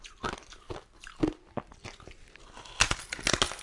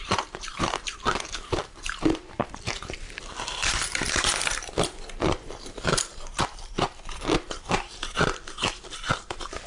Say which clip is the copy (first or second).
second